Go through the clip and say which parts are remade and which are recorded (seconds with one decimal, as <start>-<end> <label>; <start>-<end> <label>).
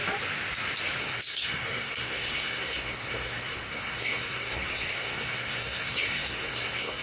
0.0-1.0 recorded; 1.0-7.0 remade